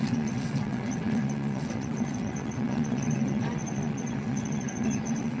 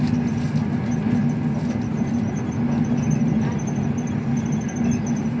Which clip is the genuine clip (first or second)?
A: second